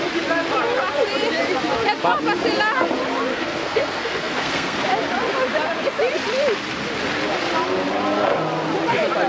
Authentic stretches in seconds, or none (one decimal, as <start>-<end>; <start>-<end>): 0.0-3.3; 4.8-9.3